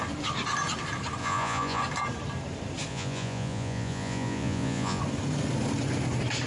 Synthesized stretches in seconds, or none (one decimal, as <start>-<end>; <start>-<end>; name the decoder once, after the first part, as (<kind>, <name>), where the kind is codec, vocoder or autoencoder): 1.2-1.8 (vocoder, Vocos); 2.9-5.0